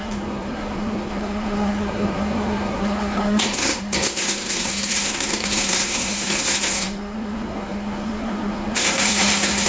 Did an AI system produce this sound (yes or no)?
yes